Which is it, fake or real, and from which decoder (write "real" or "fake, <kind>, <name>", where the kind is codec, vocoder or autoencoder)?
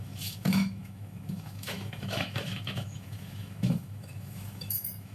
fake, autoencoder, DAC-VAE